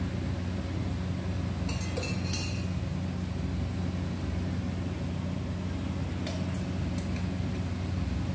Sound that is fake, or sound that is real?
real